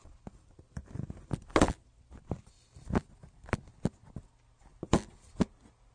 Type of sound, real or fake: real